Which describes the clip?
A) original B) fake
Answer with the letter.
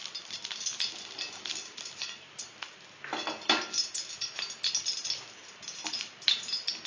A